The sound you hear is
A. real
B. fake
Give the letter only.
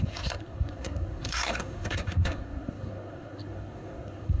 B